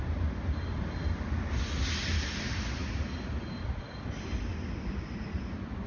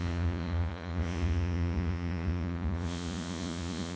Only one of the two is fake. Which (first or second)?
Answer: second